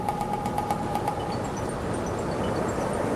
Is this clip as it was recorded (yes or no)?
yes